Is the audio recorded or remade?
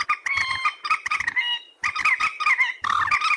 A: recorded